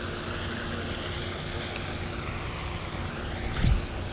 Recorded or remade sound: recorded